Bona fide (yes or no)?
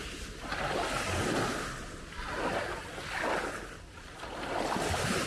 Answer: yes